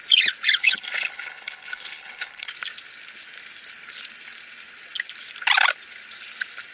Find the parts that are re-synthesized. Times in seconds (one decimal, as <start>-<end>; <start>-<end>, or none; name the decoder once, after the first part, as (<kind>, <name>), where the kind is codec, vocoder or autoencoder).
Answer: 0.6-2.5 (codec, HILCodec)